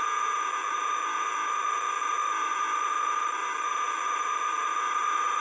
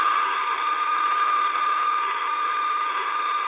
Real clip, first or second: first